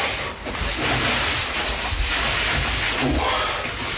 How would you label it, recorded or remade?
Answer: recorded